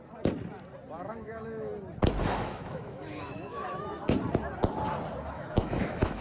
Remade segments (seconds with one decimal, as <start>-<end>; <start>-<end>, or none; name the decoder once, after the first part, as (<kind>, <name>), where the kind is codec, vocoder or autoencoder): 1.0-1.7 (autoencoder, DAC-VAE); 2.2-4.0; 5.3-6.2

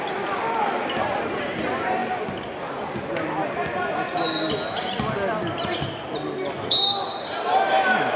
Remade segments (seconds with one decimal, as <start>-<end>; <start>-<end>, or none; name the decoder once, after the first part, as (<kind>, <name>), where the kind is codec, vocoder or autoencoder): none

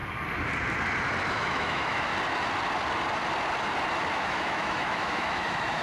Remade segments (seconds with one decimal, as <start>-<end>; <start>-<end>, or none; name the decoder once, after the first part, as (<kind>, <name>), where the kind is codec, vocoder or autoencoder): 1.3-2.1 (autoencoder, DAC-VAE); 4.1-5.8

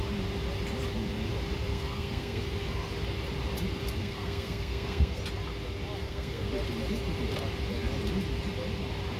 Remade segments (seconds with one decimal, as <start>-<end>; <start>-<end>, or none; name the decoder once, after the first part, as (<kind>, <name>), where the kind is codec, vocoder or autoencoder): 1.7-2.4 (codec, SNAC); 4.0-5.2; 6.0-6.5

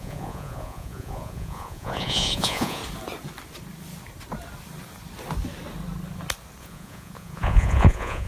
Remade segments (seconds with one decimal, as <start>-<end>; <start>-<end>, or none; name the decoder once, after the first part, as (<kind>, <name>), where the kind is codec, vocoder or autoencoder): 0.0-2.8 (vocoder, Vocos); 6.6-8.3